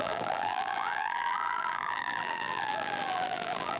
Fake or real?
fake